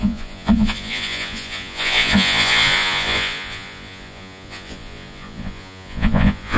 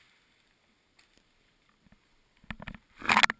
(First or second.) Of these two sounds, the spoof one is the first